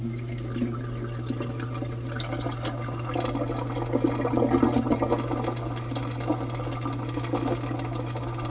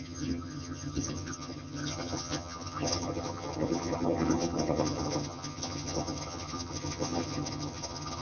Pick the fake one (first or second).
second